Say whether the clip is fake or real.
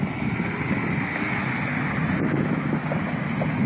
real